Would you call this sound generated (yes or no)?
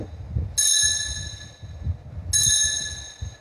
no